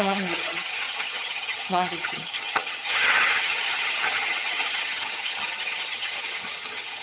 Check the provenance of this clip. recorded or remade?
remade